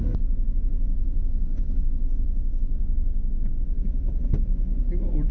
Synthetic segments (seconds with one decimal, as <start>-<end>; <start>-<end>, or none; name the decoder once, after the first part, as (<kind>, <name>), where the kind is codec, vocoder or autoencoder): 1.0-3.4 (codec, DAC)